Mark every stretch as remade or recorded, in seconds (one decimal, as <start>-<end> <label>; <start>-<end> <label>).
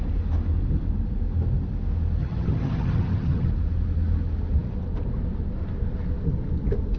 0.0-2.2 recorded; 2.2-3.5 remade; 3.5-7.0 recorded